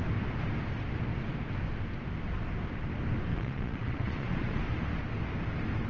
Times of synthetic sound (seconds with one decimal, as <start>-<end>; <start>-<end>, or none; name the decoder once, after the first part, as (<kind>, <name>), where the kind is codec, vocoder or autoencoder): 3.3-4.6 (vocoder, Vocos)